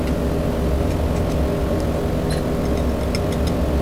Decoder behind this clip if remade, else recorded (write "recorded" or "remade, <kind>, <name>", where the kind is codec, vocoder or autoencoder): recorded